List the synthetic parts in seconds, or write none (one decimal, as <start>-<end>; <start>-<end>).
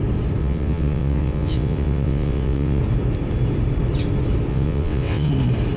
0.4-2.8; 4.5-5.3